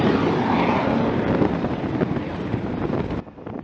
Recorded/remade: recorded